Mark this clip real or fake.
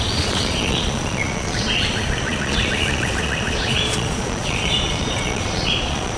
fake